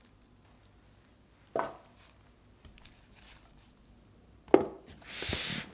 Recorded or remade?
recorded